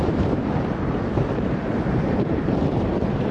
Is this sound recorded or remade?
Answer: remade